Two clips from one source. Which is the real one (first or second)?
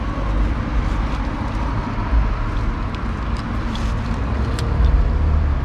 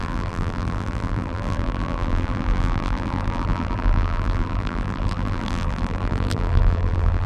first